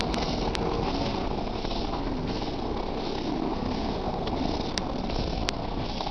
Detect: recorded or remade remade